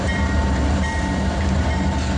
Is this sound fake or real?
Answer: fake